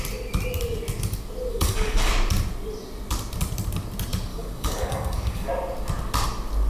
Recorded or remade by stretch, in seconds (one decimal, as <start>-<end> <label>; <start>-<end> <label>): 0.0-1.5 recorded; 1.5-2.1 remade; 2.1-4.3 recorded; 4.3-5.5 remade; 5.5-6.7 recorded